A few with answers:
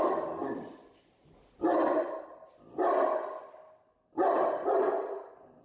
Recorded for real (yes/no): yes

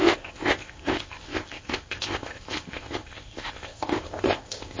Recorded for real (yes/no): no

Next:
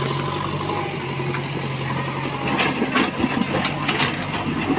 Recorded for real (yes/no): yes